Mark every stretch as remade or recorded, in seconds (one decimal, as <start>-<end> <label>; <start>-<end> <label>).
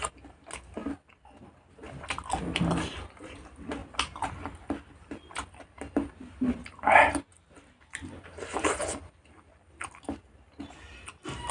0.0-11.5 recorded